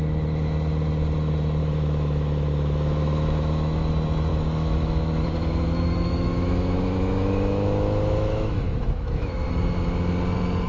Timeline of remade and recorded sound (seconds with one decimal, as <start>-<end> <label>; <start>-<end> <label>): 0.0-1.6 recorded; 1.6-3.9 remade; 3.9-4.3 recorded; 4.3-9.5 remade; 9.5-10.7 recorded